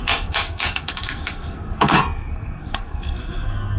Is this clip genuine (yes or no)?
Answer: no